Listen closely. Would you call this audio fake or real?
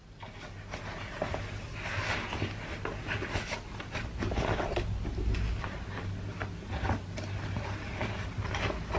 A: real